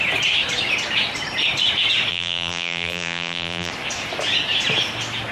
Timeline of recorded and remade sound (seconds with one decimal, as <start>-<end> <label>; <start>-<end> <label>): 0.0-2.1 recorded; 2.1-3.7 remade; 3.7-5.3 recorded